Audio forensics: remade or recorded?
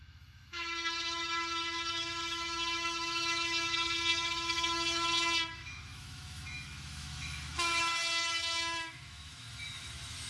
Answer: remade